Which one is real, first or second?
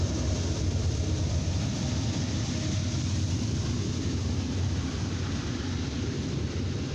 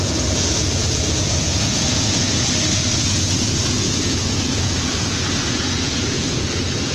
first